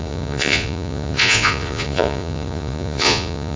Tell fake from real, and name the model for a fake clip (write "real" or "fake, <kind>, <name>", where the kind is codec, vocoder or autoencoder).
fake, vocoder, Vocos